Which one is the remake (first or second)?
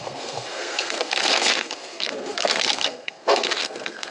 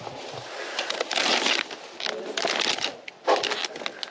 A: first